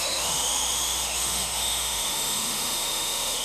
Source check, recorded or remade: remade